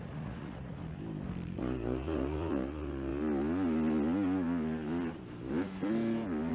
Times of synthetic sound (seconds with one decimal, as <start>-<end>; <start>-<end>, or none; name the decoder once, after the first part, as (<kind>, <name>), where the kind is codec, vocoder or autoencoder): 0.0-0.8 (vocoder, Vocos); 1.6-3.1